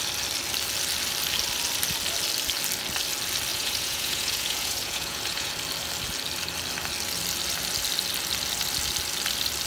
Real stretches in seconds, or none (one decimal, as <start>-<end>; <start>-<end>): 0.0-3.5; 5.5-9.7